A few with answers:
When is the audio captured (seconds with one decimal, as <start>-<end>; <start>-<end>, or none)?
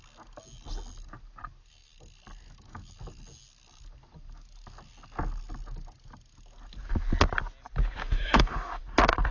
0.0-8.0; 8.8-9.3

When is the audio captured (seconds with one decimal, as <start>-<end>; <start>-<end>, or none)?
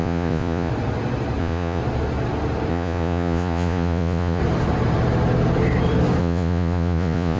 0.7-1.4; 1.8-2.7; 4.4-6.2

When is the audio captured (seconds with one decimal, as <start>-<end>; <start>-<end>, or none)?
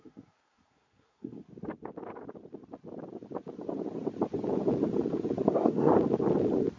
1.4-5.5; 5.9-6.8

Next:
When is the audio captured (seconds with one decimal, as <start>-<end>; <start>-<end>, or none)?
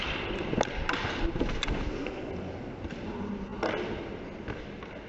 0.0-5.1